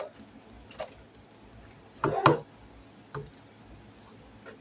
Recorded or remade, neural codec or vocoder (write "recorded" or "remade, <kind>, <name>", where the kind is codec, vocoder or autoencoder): recorded